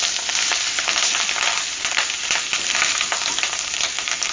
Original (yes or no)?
yes